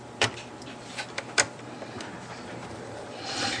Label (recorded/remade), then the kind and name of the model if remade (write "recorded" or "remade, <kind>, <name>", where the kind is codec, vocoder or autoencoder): remade, vocoder, BigVGAN v2